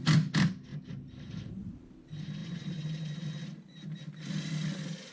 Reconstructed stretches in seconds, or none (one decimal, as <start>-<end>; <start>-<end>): none